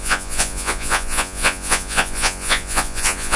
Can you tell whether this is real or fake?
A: fake